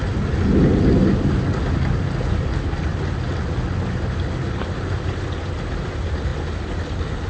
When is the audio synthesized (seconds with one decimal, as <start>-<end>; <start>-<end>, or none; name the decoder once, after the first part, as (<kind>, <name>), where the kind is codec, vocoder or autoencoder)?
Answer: none